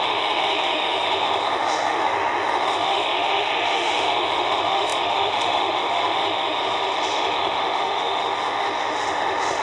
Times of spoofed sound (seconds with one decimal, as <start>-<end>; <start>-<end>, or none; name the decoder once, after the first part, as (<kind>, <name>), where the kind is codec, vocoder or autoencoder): 0.0-9.6 (autoencoder, DAC-VAE)